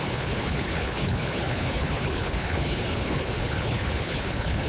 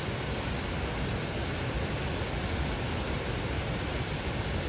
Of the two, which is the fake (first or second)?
first